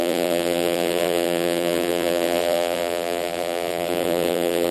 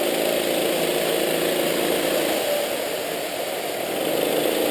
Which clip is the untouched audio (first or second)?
second